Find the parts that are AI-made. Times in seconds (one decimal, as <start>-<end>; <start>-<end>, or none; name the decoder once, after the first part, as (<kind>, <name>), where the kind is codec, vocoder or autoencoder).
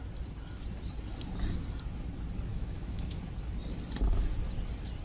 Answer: 2.5-3.2 (autoencoder, DAC-VAE)